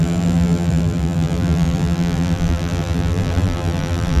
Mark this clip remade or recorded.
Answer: remade